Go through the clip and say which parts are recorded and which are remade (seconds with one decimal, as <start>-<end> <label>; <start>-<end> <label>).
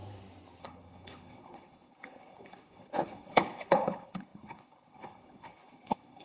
0.0-0.6 recorded; 0.6-6.2 remade